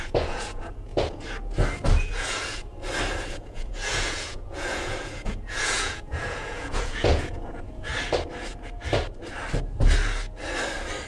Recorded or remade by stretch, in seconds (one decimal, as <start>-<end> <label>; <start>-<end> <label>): 0.0-0.9 remade; 0.9-2.0 recorded; 2.0-2.7 remade; 2.7-3.3 recorded; 3.3-7.9 remade; 7.9-11.1 recorded

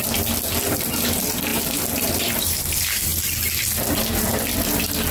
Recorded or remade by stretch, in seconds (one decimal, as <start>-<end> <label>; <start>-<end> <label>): 0.0-5.1 recorded

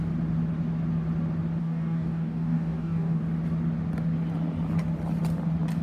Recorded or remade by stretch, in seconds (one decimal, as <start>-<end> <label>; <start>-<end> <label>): 0.0-1.6 recorded; 1.6-3.2 remade; 3.2-5.8 recorded

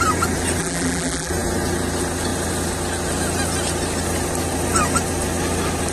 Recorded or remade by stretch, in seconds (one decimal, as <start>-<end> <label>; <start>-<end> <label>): 0.0-0.6 recorded; 0.6-1.3 remade; 1.3-5.9 recorded

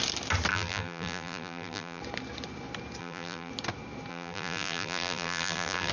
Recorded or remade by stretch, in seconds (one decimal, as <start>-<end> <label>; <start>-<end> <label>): 0.0-0.5 recorded; 0.5-2.0 remade; 2.0-3.0 recorded; 3.0-3.5 remade; 3.5-4.1 recorded; 4.1-5.9 remade